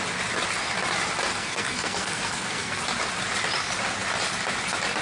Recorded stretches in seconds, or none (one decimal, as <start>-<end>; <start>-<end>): 0.0-1.3; 2.8-5.0